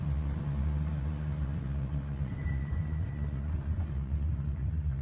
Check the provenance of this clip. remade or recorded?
remade